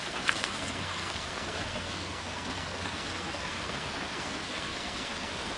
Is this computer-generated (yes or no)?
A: yes